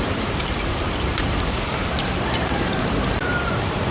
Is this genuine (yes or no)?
no